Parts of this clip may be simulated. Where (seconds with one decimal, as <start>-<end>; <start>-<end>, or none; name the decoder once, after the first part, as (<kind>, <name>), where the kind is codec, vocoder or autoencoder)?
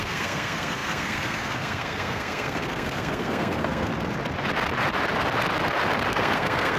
0.0-3.9 (codec, SNAC); 6.1-6.8